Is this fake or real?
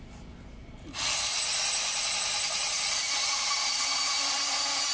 real